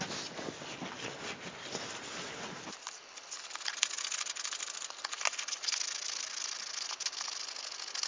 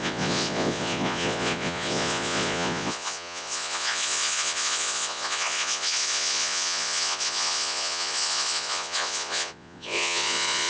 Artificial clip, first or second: second